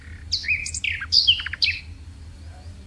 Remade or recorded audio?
recorded